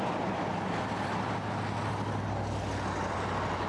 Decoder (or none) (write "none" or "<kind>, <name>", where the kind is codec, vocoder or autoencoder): none